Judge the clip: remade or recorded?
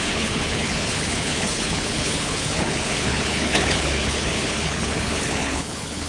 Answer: remade